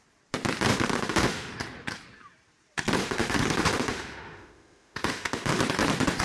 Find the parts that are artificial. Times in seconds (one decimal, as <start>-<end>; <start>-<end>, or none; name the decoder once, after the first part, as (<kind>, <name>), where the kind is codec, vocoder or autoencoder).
0.7-1.5 (autoencoder, DAC-VAE); 3.0-5.6